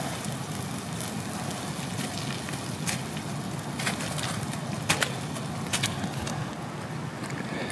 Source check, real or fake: real